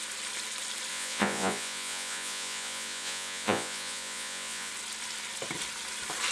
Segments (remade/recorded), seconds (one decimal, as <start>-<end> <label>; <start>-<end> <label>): 0.0-0.9 recorded; 0.9-4.7 remade; 4.7-6.3 recorded